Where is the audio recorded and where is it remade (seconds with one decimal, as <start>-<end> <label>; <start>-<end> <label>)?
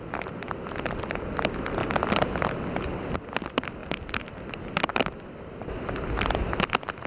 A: 0.0-1.8 remade; 1.8-2.3 recorded; 2.3-7.1 remade